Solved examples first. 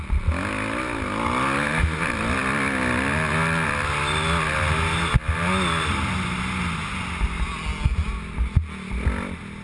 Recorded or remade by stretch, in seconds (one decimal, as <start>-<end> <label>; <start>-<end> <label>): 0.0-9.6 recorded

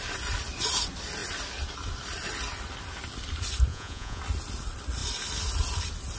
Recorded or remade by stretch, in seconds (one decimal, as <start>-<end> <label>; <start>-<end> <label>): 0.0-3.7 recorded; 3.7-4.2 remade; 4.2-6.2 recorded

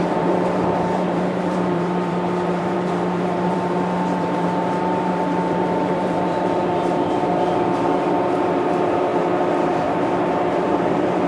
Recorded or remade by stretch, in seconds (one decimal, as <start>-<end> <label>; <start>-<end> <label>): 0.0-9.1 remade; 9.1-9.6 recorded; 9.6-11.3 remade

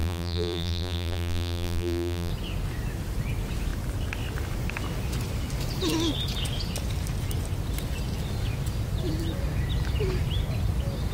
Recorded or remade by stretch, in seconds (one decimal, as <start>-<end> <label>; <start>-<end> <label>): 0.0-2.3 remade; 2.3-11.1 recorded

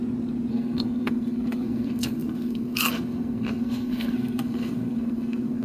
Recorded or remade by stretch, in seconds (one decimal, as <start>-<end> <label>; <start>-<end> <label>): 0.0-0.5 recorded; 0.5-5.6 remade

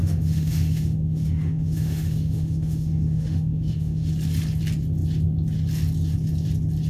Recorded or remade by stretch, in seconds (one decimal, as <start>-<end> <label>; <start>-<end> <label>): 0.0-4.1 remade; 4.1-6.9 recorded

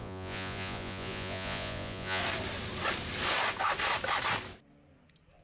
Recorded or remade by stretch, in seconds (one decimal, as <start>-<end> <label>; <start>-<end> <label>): 0.0-2.2 remade; 2.2-5.4 recorded

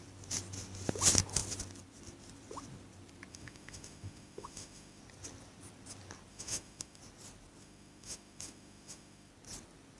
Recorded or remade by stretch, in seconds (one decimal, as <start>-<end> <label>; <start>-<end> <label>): 0.0-3.3 recorded; 3.3-5.0 remade; 5.0-6.3 recorded; 6.3-7.0 remade; 7.0-7.6 recorded; 7.6-9.3 remade; 9.3-10.0 recorded